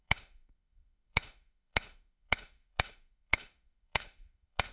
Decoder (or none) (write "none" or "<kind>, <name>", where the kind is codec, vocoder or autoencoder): autoencoder, DAC-VAE